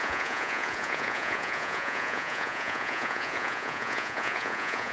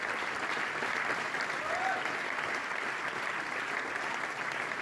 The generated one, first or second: first